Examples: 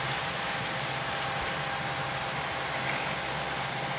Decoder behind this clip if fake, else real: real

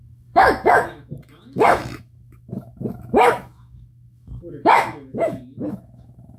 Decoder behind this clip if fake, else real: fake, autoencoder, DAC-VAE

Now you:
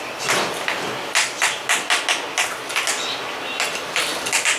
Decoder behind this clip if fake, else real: real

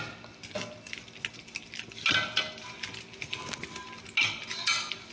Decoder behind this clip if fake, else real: real